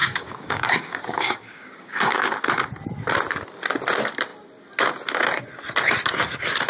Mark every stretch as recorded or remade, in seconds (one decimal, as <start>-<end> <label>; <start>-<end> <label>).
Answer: 0.0-2.3 remade; 2.3-6.7 recorded